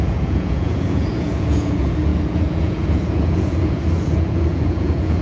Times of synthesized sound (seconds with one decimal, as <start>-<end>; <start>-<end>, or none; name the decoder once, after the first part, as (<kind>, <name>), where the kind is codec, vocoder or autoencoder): 0.0-5.2 (vocoder, Vocos)